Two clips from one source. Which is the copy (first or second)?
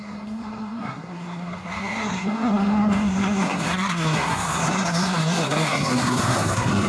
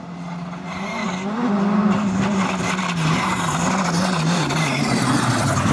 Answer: first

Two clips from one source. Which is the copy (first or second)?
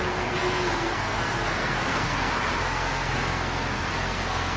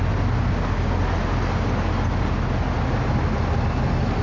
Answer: first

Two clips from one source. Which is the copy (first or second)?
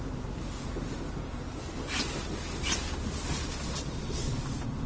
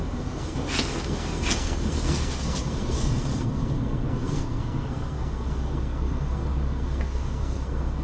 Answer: second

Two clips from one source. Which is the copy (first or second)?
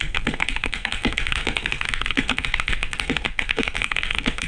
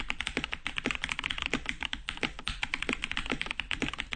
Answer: first